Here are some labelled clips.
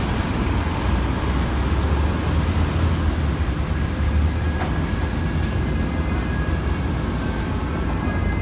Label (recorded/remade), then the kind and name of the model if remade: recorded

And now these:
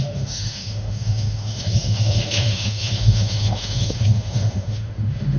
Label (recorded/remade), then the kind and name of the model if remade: remade, autoencoder, DAC-VAE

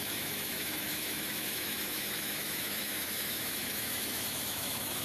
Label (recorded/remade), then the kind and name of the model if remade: remade, autoencoder, DAC-VAE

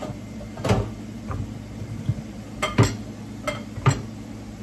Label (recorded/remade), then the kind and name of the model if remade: recorded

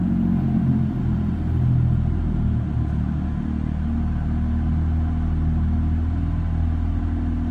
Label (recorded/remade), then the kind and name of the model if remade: recorded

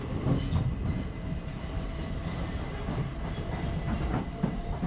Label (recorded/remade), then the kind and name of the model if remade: recorded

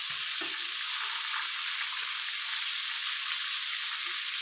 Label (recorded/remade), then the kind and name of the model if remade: recorded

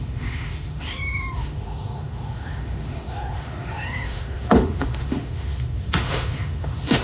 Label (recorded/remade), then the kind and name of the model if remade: remade, autoencoder, DAC-VAE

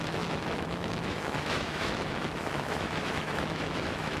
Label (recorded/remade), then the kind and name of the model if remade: remade, autoencoder, DAC-VAE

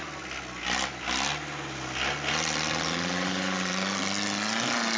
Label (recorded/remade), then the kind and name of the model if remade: recorded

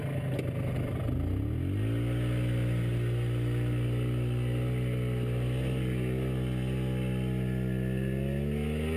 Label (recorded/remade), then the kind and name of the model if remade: recorded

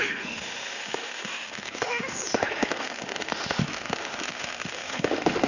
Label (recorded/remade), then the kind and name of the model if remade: remade, autoencoder, DAC-VAE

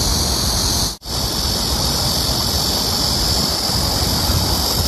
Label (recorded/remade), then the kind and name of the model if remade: recorded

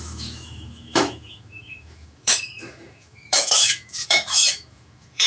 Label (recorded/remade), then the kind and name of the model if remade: remade, autoencoder, DAC-VAE